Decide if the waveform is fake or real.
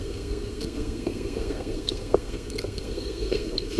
fake